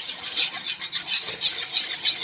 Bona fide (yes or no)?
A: yes